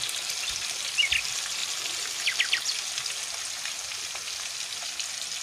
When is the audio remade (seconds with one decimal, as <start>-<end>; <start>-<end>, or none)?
none